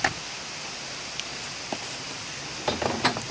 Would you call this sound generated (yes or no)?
no